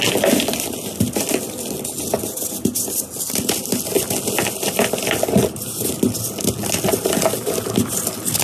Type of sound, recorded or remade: recorded